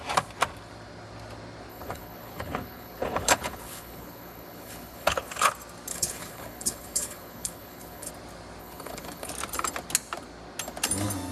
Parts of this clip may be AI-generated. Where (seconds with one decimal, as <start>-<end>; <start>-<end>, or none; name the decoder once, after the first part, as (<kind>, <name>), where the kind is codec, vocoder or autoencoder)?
1.7-5.5 (codec, HILCodec); 5.9-8.1; 8.6-9.3